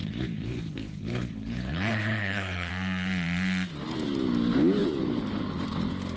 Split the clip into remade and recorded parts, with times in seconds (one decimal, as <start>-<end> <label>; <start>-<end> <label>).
0.0-2.7 remade; 2.7-6.2 recorded